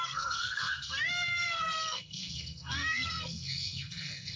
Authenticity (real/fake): fake